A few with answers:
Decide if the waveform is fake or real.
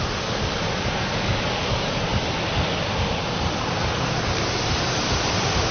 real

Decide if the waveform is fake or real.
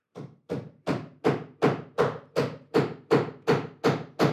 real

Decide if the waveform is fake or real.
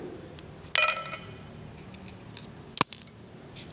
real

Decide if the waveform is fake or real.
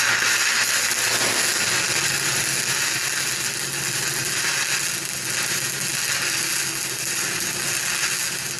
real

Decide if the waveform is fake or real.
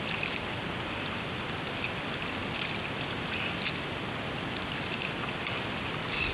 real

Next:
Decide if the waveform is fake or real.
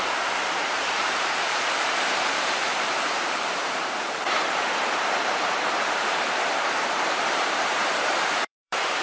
fake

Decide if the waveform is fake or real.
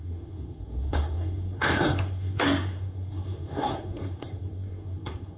fake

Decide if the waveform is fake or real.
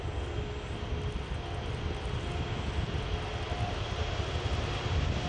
real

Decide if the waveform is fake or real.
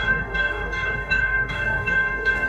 fake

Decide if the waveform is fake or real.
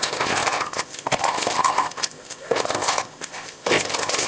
fake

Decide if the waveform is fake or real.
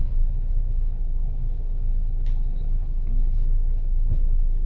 fake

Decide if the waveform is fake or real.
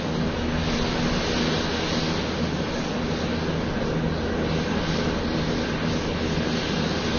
real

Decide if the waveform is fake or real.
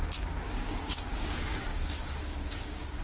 fake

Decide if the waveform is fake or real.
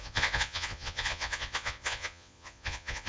fake